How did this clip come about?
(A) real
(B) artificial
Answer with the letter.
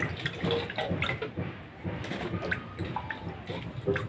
A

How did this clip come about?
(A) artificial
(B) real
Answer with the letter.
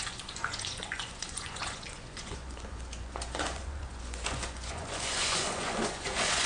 A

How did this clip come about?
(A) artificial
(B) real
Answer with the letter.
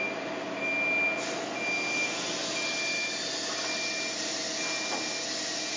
B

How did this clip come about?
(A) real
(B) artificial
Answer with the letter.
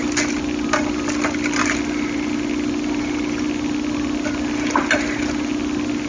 A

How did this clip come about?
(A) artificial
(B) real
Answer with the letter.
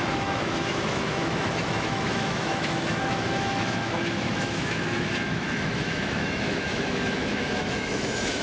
A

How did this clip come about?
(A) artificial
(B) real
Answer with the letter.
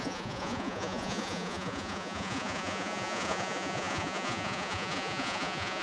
A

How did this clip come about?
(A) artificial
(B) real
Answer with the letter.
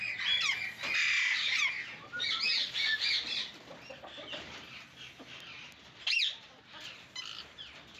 B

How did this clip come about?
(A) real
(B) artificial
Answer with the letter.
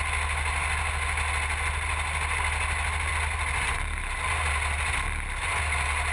A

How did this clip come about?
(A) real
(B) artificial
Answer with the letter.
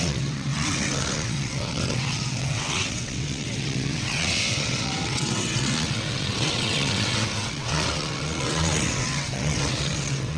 B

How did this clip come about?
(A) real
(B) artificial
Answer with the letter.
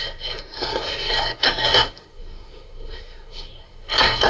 B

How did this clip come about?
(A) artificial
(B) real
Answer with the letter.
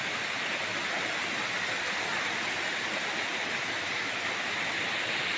B